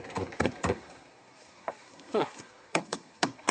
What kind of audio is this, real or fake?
fake